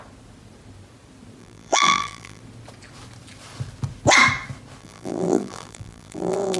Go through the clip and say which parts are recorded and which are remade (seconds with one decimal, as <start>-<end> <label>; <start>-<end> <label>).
0.0-1.4 recorded; 1.4-2.4 remade; 2.4-4.8 recorded; 4.8-6.6 remade